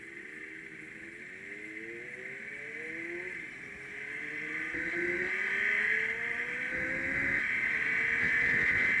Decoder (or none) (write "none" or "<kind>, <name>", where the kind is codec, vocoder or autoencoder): none